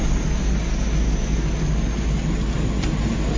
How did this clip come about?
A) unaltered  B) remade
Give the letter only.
A